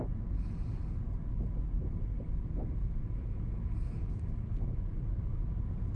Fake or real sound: real